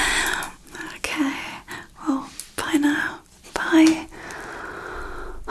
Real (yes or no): yes